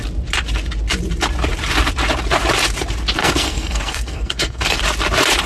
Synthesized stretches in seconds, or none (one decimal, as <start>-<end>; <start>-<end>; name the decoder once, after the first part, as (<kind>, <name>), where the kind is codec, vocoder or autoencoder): 3.2-4.8 (codec, SNAC)